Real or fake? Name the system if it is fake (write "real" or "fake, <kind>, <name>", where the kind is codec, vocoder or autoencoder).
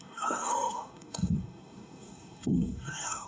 fake, codec, SNAC